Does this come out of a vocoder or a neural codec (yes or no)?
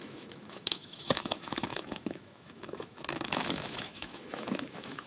yes